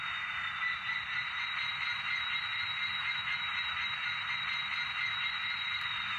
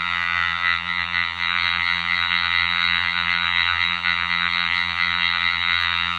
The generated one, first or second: second